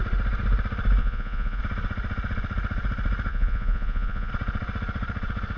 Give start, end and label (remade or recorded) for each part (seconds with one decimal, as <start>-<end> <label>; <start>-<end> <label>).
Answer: 0.0-1.0 recorded; 1.0-1.6 remade; 1.6-3.3 recorded; 3.3-4.3 remade; 4.3-5.6 recorded